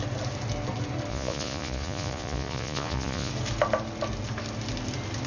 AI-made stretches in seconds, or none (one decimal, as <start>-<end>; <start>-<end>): 1.1-3.3